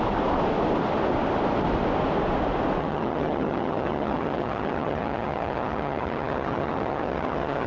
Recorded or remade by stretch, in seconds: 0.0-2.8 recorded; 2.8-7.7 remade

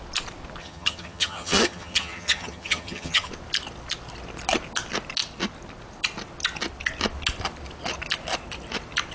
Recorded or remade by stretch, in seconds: 0.0-0.6 recorded; 0.6-3.3 remade; 3.3-9.1 recorded

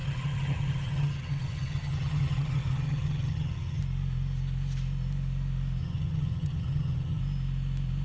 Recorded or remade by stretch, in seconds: 0.0-3.8 remade; 3.8-5.8 recorded; 5.8-7.2 remade; 7.2-8.0 recorded

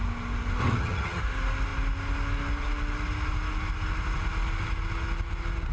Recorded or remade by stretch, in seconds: 0.0-0.6 recorded; 0.6-1.2 remade; 1.2-5.7 recorded